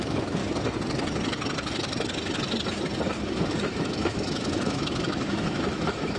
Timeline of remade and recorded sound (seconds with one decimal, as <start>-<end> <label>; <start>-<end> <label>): 0.0-0.4 remade; 0.4-3.5 recorded; 3.5-6.2 remade